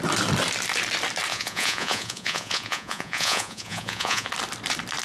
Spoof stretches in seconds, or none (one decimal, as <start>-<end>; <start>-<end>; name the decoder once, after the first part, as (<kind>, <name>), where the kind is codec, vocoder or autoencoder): 1.3-4.3 (vocoder, Vocos)